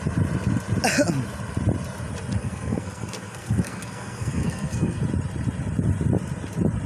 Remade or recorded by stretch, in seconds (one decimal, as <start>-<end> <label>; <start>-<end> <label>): 0.0-2.4 recorded; 2.4-5.0 remade; 5.0-6.9 recorded

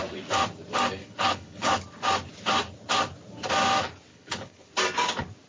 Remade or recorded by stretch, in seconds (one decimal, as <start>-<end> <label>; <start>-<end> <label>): 0.0-1.0 recorded; 1.0-1.8 remade; 1.8-4.1 recorded; 4.1-4.7 remade; 4.7-5.5 recorded

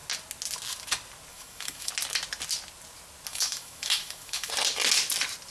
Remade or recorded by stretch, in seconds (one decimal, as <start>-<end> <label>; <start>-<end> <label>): 0.0-1.3 recorded; 1.3-1.9 remade; 1.9-3.3 recorded; 3.3-4.5 remade; 4.5-5.5 recorded

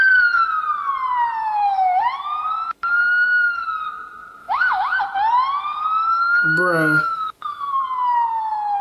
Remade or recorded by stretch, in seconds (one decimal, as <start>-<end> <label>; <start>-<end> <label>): 0.0-1.4 recorded; 1.4-2.0 remade; 2.0-4.4 recorded; 4.4-5.0 remade; 5.0-7.0 recorded; 7.0-7.8 remade; 7.8-8.8 recorded

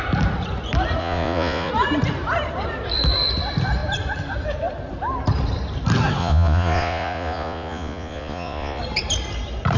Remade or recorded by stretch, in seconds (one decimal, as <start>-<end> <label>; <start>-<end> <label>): 0.0-1.0 recorded; 1.0-1.7 remade; 1.7-6.2 recorded; 6.2-8.8 remade; 8.8-9.8 recorded

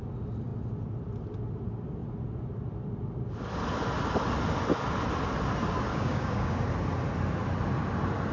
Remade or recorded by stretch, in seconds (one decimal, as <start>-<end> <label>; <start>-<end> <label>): 0.0-5.9 recorded; 5.9-6.6 remade; 6.6-8.3 recorded

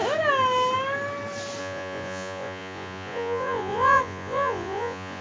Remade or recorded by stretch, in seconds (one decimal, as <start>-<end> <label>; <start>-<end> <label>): 0.0-1.6 recorded; 1.6-5.2 remade